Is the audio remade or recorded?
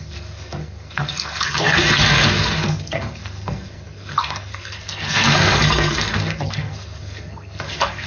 remade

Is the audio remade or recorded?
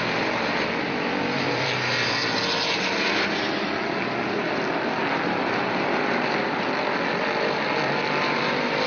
remade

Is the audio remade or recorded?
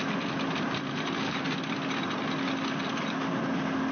recorded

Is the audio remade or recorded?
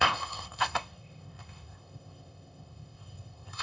remade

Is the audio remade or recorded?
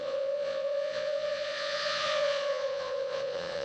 remade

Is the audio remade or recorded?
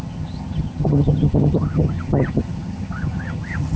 remade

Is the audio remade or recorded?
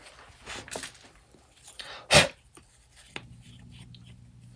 recorded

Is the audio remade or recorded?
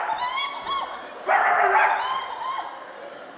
recorded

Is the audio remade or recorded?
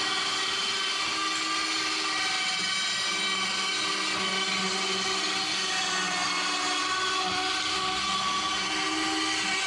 recorded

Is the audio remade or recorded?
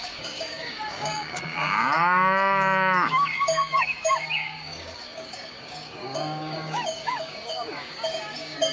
remade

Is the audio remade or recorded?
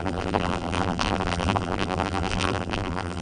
remade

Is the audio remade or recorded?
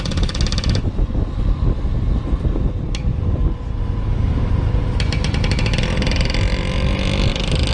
recorded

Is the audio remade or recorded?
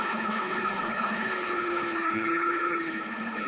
remade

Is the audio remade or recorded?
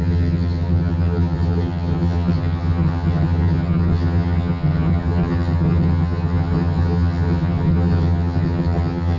remade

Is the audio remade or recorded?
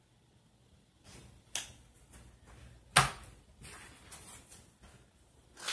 recorded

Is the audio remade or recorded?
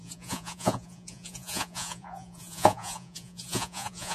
remade